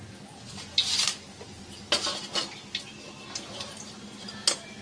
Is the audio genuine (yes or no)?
yes